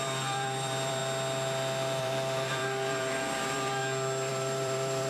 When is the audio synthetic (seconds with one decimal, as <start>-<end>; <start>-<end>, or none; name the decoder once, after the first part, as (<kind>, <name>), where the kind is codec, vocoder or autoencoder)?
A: 0.0-1.0 (vocoder, BigVGAN v2); 2.0-3.8; 4.3-5.1